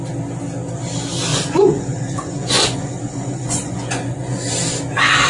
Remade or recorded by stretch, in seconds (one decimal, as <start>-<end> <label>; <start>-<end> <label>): 0.0-1.3 recorded; 1.3-4.5 remade; 4.5-5.3 recorded